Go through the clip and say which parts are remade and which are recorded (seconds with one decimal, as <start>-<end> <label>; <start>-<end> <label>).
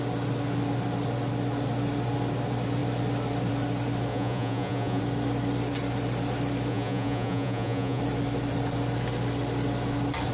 0.0-4.1 recorded; 4.1-5.0 remade; 5.0-6.7 recorded; 6.7-8.0 remade; 8.0-10.3 recorded